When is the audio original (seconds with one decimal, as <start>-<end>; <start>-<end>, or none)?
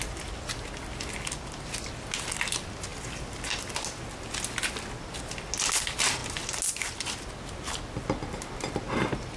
0.0-9.4